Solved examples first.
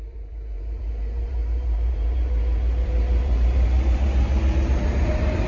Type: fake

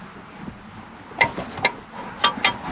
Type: real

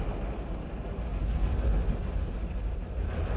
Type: real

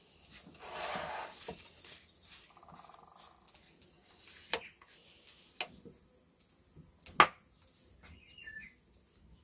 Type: real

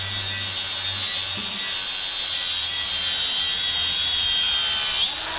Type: real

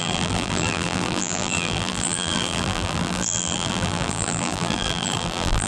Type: fake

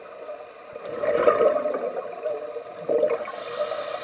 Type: real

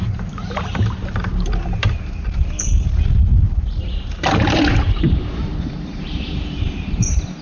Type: fake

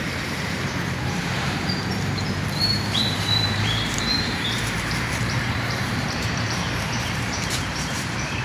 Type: fake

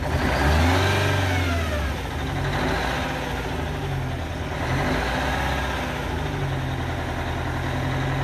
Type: real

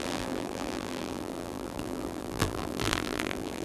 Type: fake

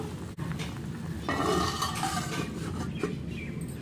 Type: real